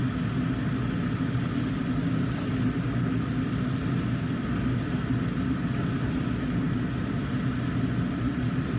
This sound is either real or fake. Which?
real